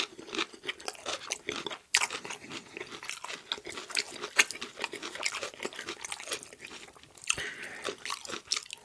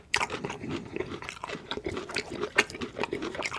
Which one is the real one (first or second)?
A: first